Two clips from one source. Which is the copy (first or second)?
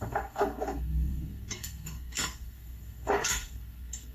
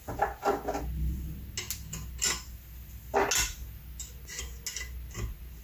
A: first